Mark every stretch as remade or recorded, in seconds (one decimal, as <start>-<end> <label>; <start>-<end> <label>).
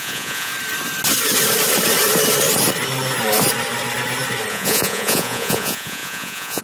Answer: 0.0-0.5 remade; 0.5-4.5 recorded; 4.5-6.6 remade